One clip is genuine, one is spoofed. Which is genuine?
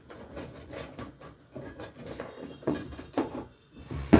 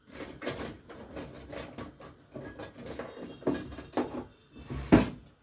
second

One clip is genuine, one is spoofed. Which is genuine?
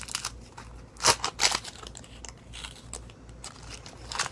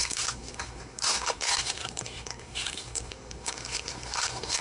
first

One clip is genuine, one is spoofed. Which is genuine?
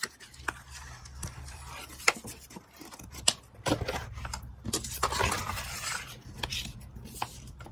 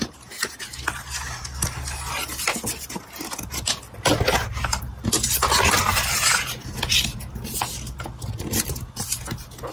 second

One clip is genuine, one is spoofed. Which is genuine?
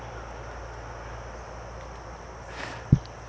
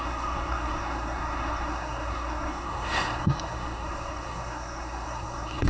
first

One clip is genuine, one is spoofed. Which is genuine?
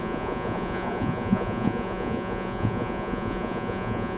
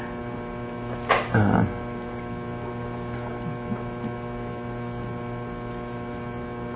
second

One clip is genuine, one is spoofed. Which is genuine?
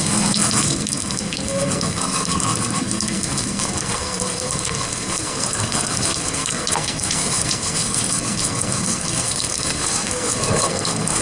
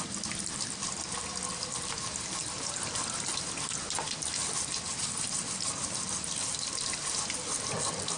second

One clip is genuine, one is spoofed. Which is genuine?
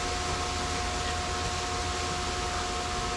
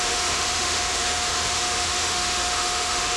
first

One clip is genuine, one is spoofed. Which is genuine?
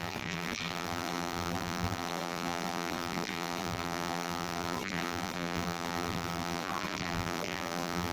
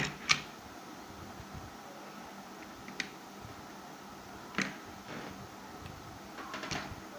second